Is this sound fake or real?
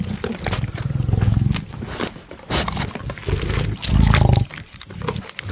real